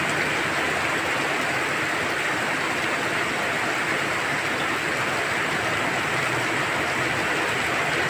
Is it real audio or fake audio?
real